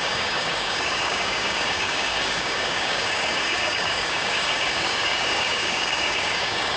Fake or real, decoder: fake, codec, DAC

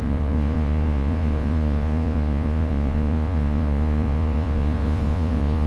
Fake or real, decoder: fake, vocoder, Vocos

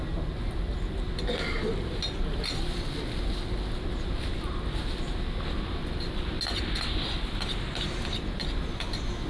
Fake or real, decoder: real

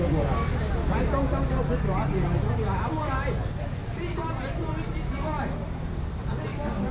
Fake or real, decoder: real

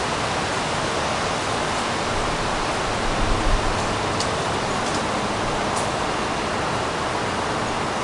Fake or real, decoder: real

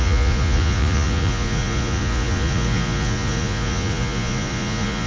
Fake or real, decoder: fake, vocoder, Vocos